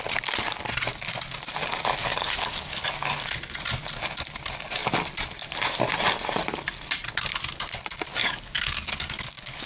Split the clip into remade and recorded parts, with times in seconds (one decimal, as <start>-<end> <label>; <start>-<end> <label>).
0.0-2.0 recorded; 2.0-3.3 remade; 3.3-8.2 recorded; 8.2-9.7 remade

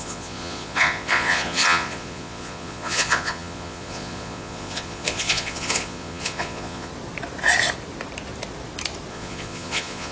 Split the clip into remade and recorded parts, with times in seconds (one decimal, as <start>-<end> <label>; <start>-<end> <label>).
0.0-6.9 remade; 6.9-9.1 recorded; 9.1-10.1 remade

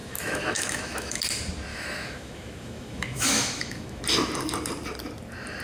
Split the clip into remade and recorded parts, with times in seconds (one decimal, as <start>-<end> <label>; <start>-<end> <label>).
0.0-1.2 remade; 1.2-1.7 recorded; 1.7-4.0 remade; 4.0-5.6 recorded